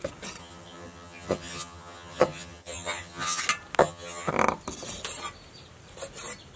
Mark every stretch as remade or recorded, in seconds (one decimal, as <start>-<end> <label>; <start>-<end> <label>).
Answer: 0.0-0.4 recorded; 0.4-3.4 remade; 3.4-3.8 recorded; 3.8-4.3 remade; 4.3-6.6 recorded